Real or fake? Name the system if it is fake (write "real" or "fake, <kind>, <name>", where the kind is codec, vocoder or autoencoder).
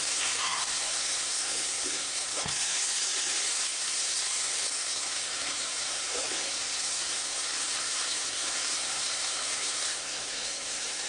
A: fake, codec, SNAC